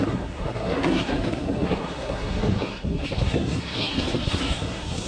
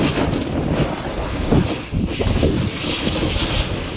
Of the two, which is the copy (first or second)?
first